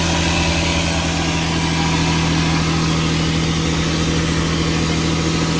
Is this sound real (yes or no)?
yes